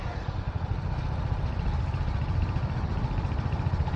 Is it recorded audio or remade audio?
recorded